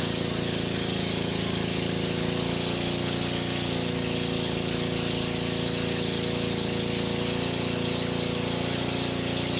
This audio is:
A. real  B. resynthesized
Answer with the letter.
A